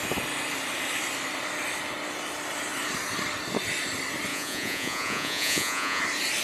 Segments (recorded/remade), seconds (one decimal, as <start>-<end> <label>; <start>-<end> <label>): 0.0-4.3 recorded; 4.3-6.0 remade; 6.0-6.4 recorded